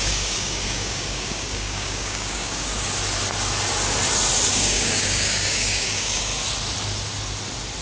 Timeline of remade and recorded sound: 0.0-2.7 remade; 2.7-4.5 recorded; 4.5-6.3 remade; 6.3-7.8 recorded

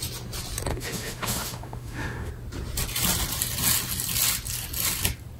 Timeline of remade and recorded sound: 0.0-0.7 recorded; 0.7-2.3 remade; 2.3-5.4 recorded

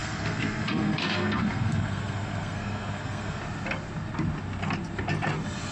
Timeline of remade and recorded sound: 0.0-3.4 remade; 3.4-5.7 recorded

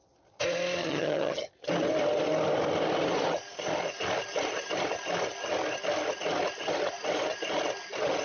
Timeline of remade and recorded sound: 0.0-0.8 recorded; 0.8-1.5 remade; 1.5-8.2 recorded

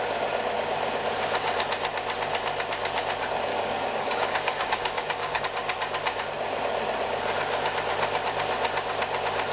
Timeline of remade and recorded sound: 0.0-3.5 recorded; 3.5-5.4 remade; 5.4-9.5 recorded

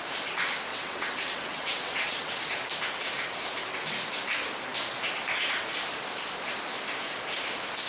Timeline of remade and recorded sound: 0.0-0.7 recorded; 0.7-2.4 remade; 2.4-7.9 recorded

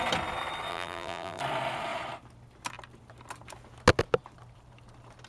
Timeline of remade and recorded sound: 0.0-0.7 recorded; 0.7-1.4 remade; 1.4-5.3 recorded